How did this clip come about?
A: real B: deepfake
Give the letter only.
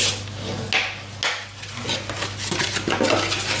A